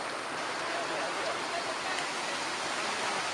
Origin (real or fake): real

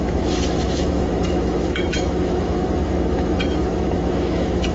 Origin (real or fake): fake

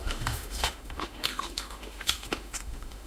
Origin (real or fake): fake